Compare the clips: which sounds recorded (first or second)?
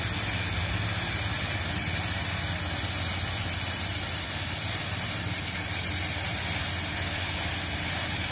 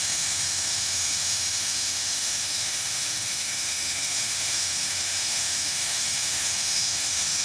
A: first